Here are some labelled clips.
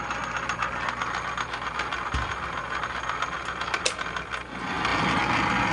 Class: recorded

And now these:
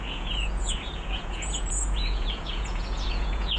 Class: remade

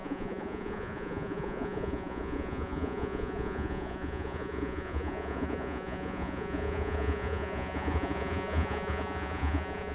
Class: remade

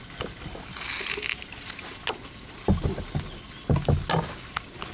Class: recorded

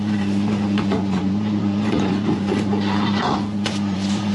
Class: remade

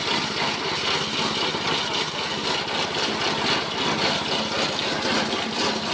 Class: recorded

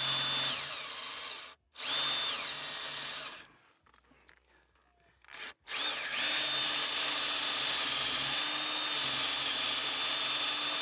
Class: recorded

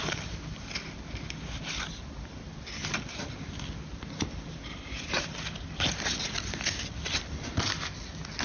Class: recorded